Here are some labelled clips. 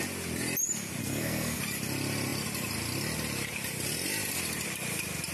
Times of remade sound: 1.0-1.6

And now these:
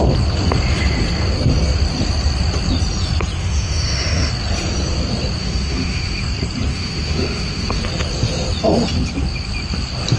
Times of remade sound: 3.4-4.3; 5.4-6.2; 6.7-7.8

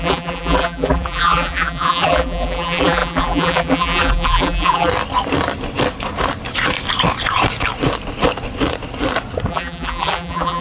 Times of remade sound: 0.0-4.9; 9.5-10.6

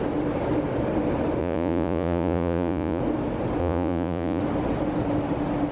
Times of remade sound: 1.4-3.0; 3.6-4.4

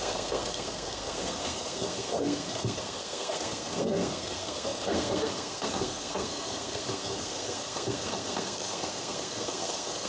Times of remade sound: 0.0-10.1